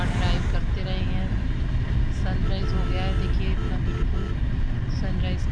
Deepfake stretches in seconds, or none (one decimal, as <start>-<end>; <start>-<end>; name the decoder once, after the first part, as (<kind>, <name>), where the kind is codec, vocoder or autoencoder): none